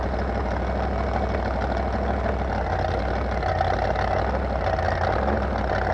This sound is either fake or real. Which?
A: real